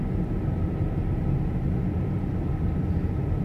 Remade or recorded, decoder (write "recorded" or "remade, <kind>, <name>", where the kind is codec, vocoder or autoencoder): recorded